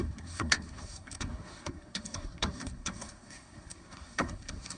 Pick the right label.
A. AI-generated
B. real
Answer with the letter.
A